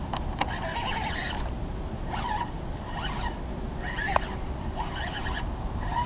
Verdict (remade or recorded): recorded